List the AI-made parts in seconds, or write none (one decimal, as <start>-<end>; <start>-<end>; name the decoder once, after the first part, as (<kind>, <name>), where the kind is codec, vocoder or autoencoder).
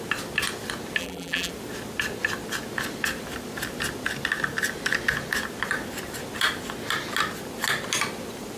1.0-1.5 (vocoder, BigVGAN v2)